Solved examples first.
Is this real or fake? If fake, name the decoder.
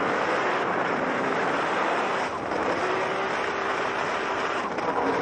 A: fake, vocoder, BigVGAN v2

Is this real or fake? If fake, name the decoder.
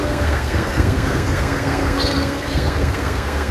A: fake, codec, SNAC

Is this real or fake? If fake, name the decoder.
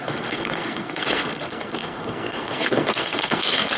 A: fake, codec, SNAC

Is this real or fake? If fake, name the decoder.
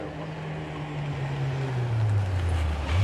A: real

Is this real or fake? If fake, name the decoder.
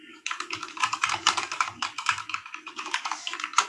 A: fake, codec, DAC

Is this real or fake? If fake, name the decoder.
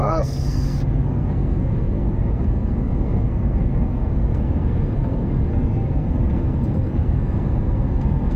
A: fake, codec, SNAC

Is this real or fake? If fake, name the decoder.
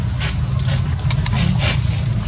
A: real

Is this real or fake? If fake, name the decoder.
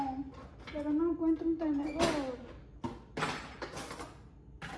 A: real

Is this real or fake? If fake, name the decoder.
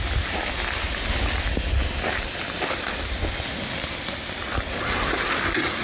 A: real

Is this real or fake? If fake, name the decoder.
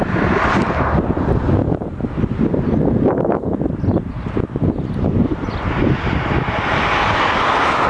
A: real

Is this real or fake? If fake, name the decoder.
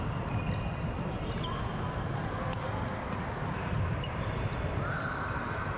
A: real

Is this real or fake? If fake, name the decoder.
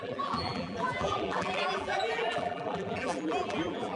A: fake, vocoder, BigVGAN v2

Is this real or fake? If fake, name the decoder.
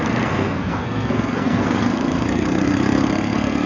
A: fake, codec, SNAC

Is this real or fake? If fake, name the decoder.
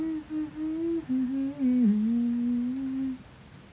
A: real